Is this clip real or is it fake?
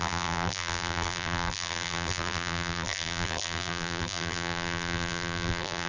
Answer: fake